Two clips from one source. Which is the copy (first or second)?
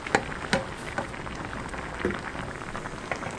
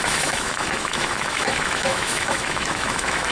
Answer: second